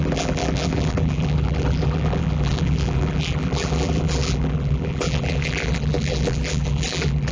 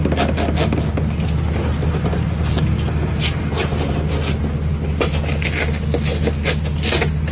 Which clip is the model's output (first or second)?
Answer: first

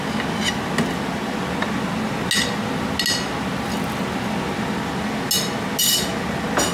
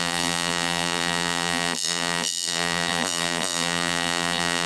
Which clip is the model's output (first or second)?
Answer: second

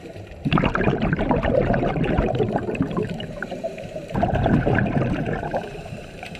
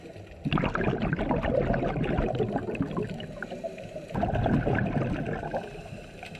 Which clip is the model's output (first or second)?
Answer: first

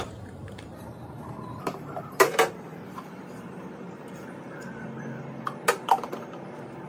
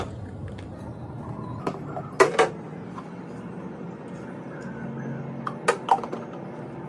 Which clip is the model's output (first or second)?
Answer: first